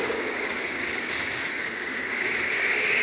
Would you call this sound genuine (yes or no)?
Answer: no